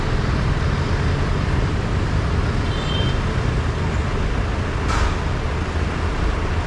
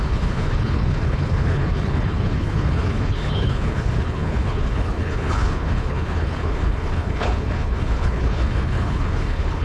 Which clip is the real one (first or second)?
first